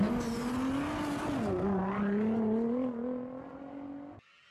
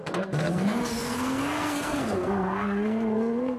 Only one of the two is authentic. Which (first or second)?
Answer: first